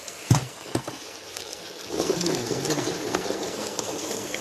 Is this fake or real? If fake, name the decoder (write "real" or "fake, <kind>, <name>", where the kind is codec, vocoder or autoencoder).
fake, codec, SNAC